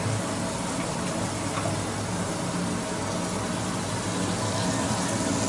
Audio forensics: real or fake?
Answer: real